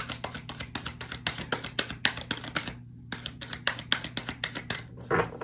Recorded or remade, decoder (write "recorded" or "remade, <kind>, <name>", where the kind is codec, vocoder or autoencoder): recorded